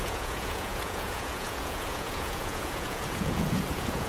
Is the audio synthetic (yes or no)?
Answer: yes